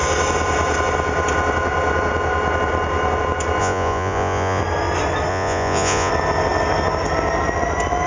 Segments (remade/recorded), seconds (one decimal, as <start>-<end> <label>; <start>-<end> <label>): 0.0-3.6 recorded; 3.6-4.6 remade; 4.6-5.3 recorded; 5.3-6.1 remade; 6.1-8.1 recorded